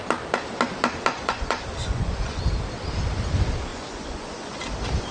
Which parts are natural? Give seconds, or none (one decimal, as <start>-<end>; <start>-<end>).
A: 0.0-1.1; 2.4-3.7; 4.6-5.1